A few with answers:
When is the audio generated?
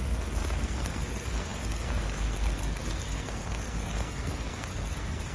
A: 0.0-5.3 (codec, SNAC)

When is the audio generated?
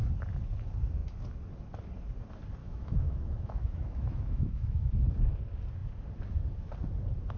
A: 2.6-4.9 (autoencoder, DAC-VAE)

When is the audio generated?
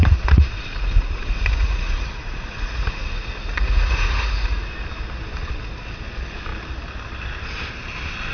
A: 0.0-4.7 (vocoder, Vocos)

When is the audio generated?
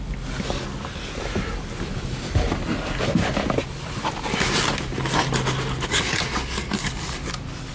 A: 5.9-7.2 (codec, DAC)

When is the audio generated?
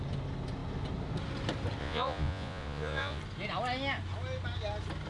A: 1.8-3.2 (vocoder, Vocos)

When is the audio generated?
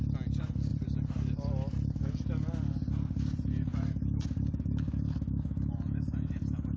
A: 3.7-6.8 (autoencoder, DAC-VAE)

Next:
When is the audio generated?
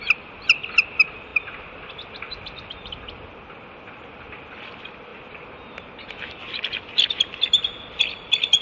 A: none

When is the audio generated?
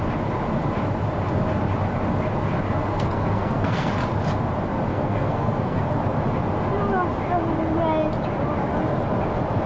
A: 2.9-3.9 (codec, SNAC); 4.9-5.9